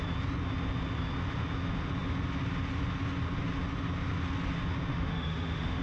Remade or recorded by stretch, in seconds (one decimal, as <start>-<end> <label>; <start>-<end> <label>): 0.0-4.9 recorded; 4.9-5.8 remade